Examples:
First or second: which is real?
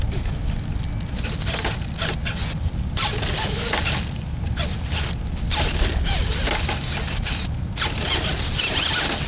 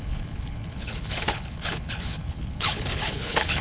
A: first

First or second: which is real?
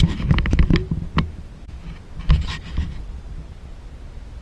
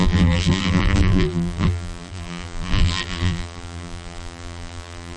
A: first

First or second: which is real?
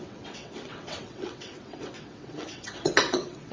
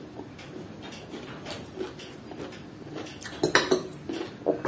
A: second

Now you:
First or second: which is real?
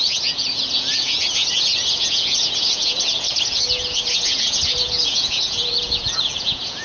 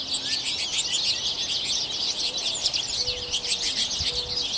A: second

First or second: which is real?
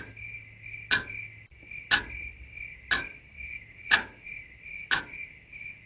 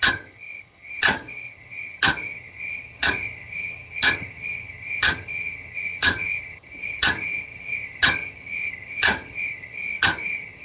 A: first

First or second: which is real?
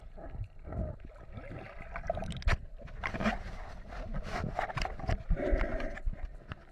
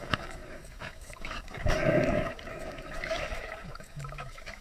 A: first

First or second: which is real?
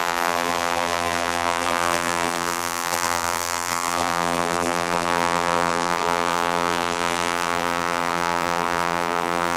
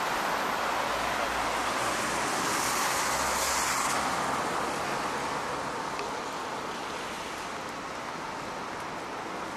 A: second